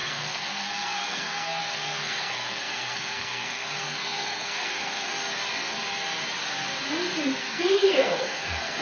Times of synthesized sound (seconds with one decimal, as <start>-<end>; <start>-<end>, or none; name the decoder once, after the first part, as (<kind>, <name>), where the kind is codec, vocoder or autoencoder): 0.0-5.1 (codec, SNAC); 7.4-8.8